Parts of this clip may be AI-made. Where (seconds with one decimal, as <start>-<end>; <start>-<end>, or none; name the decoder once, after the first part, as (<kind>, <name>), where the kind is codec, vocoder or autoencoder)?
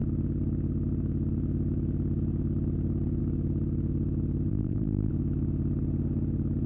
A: 4.5-5.1 (vocoder, BigVGAN v2)